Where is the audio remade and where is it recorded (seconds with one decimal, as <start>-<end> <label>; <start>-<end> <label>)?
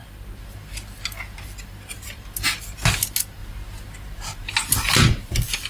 0.0-5.7 recorded